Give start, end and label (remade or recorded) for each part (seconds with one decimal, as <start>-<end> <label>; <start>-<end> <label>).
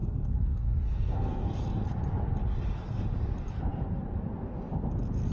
0.0-1.5 remade; 1.5-5.3 recorded